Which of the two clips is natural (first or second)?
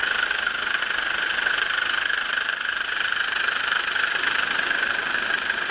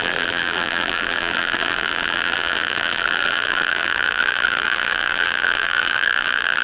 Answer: first